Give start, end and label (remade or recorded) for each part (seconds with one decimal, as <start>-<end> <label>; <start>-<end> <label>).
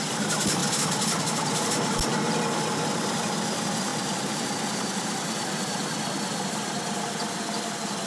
0.0-8.1 recorded